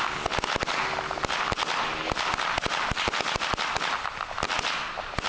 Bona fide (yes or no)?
yes